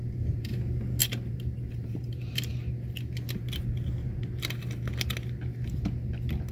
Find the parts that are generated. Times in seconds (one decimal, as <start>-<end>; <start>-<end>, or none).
0.0-0.5; 1.0-2.5